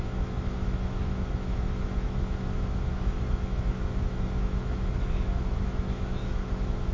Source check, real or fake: fake